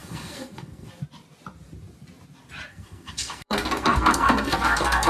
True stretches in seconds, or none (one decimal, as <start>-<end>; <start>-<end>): 0.9-2.7